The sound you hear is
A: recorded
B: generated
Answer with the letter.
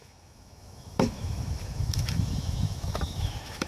B